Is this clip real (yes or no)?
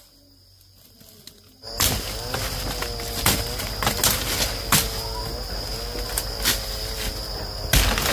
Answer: yes